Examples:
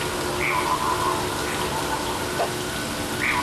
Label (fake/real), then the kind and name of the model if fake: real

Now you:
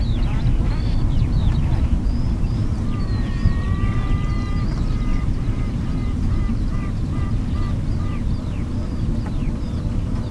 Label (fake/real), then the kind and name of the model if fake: fake, vocoder, BigVGAN v2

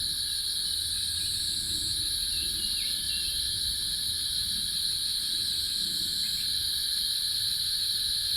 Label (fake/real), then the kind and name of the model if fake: real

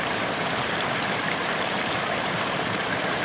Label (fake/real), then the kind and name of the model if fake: fake, vocoder, BigVGAN v2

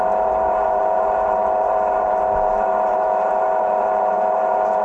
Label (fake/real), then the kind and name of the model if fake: fake, vocoder, BigVGAN v2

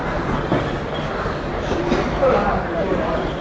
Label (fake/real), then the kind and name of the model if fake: fake, vocoder, BigVGAN v2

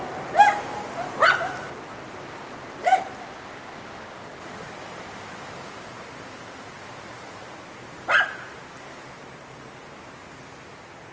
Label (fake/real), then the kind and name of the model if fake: real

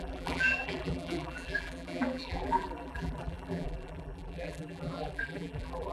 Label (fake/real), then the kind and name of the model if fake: fake, vocoder, BigVGAN v2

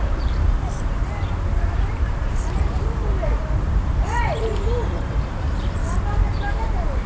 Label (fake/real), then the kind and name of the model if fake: fake, vocoder, BigVGAN v2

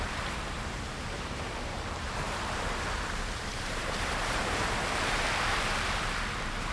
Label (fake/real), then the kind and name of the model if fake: fake, vocoder, BigVGAN v2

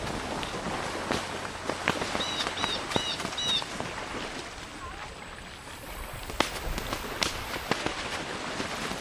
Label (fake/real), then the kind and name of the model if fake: real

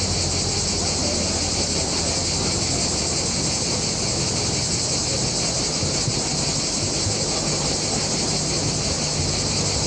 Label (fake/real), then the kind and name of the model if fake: real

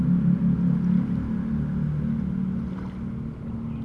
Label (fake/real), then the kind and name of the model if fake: real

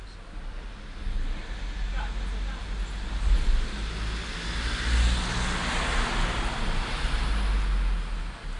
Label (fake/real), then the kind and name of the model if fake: real